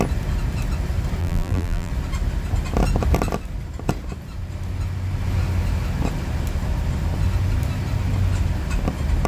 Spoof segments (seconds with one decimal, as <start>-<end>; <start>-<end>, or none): 1.2-1.9